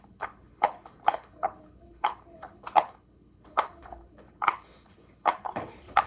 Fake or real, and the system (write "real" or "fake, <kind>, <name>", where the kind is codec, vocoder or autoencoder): fake, codec, HILCodec